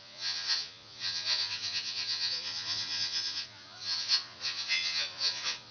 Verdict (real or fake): fake